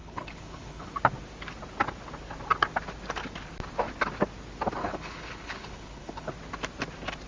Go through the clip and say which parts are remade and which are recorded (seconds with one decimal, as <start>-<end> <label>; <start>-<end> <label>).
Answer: 0.0-0.9 remade; 0.9-4.8 recorded; 4.8-6.3 remade; 6.3-7.3 recorded

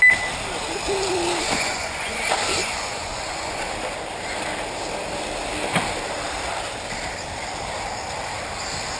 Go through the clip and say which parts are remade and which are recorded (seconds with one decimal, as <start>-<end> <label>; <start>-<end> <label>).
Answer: 0.0-1.4 recorded; 1.4-2.2 remade; 2.2-2.6 recorded; 2.6-3.7 remade; 3.7-9.0 recorded

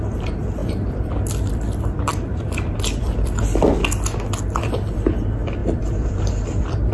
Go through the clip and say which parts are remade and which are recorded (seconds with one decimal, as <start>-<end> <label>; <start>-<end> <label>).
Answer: 0.0-3.8 remade; 3.8-4.4 recorded; 4.4-6.9 remade

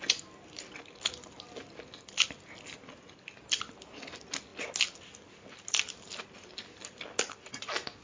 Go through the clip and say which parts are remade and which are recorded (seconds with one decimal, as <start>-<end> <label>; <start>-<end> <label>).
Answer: 0.0-8.0 recorded

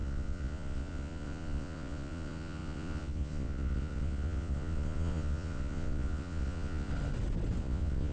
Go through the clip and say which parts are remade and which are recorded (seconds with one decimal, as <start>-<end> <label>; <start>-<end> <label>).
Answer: 0.0-6.9 remade; 6.9-7.6 recorded; 7.6-8.1 remade

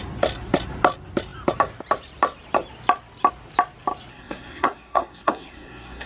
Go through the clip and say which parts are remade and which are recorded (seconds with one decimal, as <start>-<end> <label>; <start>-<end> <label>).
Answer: 0.0-4.1 recorded; 4.1-6.1 remade